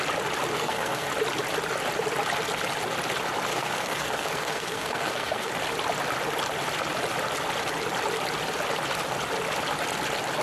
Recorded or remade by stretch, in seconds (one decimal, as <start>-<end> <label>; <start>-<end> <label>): 0.0-0.5 recorded; 0.5-1.1 remade; 1.1-3.5 recorded; 3.5-5.5 remade; 5.5-10.4 recorded